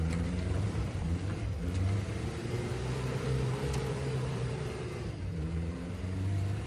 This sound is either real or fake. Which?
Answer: fake